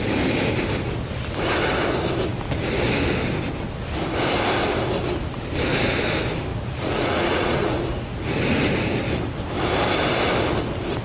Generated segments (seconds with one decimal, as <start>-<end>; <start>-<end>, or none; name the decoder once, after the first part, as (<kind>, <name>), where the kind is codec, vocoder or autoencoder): 6.5-7.8 (vocoder, Vocos)